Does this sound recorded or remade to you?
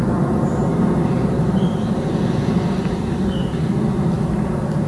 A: recorded